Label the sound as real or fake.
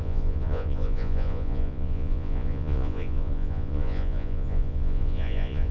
fake